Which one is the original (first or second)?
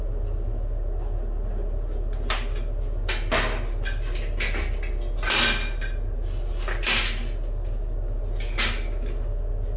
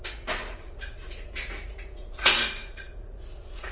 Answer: first